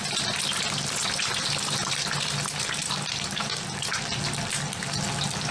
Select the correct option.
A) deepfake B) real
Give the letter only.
B